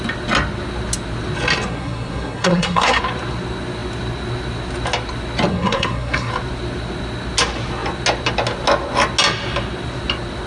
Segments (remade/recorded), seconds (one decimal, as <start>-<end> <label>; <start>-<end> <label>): 0.0-1.7 recorded; 1.7-3.0 remade; 3.0-5.5 recorded; 5.5-6.3 remade; 6.3-10.5 recorded

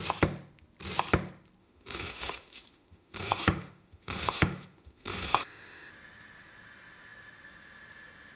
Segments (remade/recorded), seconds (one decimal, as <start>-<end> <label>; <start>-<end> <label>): 0.0-1.6 recorded; 1.6-5.9 remade; 5.9-8.4 recorded